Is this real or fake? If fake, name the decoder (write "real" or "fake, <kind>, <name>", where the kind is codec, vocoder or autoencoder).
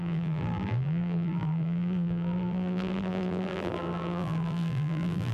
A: fake, vocoder, BigVGAN v2